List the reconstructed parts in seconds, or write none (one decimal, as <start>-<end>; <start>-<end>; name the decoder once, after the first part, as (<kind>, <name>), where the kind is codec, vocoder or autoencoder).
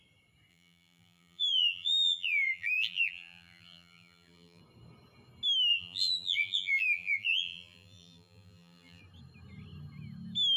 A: 0.5-4.6 (vocoder, BigVGAN v2); 5.7-9.0